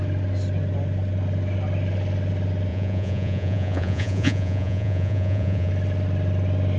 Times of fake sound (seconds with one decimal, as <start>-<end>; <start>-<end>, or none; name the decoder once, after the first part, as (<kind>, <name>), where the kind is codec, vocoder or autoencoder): 2.7-5.7 (vocoder, Vocos)